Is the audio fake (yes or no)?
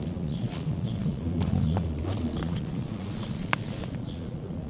yes